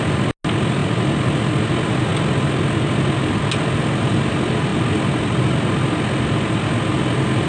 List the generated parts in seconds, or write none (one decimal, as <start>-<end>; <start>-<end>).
none